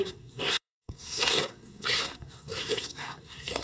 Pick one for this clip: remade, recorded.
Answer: remade